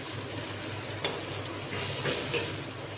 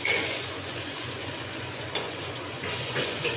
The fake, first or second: second